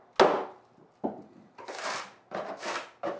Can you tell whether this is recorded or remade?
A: recorded